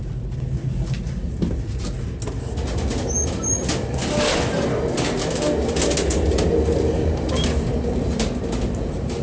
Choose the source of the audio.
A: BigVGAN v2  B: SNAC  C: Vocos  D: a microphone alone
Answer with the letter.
D